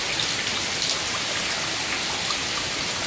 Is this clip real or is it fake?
real